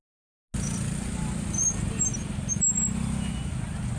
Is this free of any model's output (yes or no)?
yes